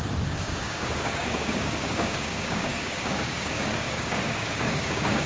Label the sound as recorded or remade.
remade